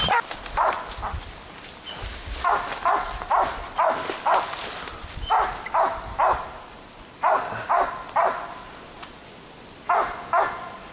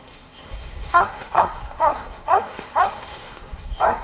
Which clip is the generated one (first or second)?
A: second